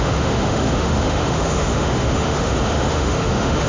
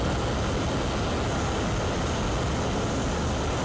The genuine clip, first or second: second